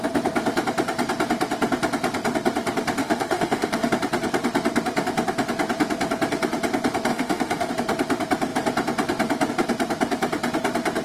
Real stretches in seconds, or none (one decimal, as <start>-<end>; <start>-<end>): 0.0-3.0; 3.9-7.1; 7.7-11.0

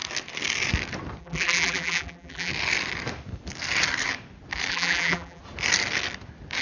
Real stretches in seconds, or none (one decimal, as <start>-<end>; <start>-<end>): 0.0-1.2; 2.5-4.7; 5.4-6.6

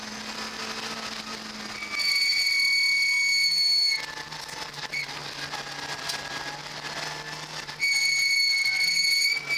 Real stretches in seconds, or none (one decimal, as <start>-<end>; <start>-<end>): 0.0-9.6